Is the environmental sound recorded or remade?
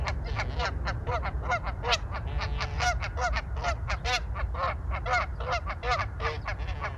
recorded